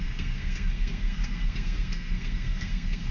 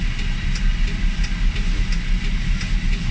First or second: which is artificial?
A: first